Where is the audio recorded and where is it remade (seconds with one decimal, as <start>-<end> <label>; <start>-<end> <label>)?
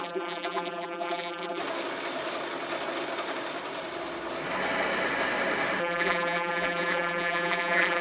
0.0-1.6 remade; 1.6-5.8 recorded; 5.8-8.0 remade